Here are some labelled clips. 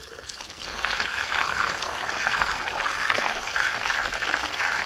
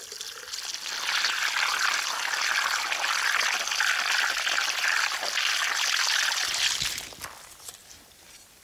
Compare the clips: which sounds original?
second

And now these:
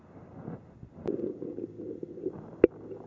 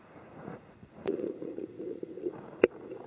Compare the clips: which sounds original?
first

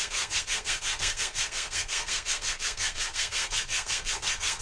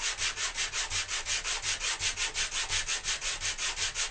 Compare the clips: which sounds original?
second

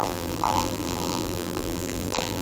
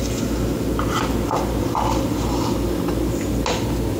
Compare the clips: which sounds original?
second